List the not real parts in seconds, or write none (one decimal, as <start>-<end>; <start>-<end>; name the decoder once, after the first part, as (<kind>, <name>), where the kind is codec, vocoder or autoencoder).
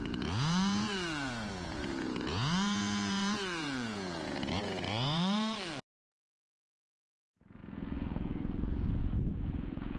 0.0-10.0 (vocoder, Vocos)